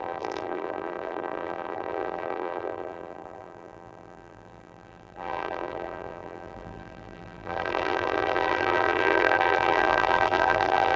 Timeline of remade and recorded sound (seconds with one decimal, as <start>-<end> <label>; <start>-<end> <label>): 0.0-11.0 remade